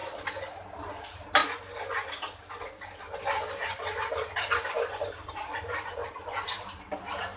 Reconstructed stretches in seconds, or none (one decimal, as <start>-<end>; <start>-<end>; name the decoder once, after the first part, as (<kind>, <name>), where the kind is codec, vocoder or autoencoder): 0.0-1.4 (vocoder, BigVGAN v2); 3.2-7.4